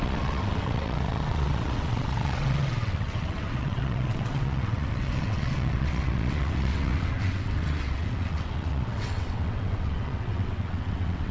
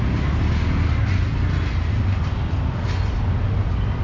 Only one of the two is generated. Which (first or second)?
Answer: first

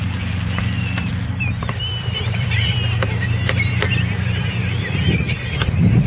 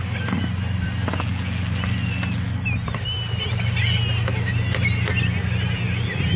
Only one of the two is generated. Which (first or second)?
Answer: first